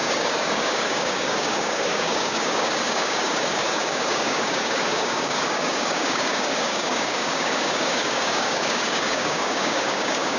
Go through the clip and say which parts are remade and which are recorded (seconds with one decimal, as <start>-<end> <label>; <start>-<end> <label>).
0.0-10.4 remade